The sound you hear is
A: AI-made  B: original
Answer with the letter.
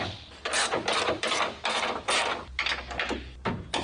A